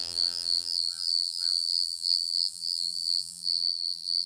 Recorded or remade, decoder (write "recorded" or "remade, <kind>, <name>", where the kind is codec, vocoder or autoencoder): remade, vocoder, BigVGAN v2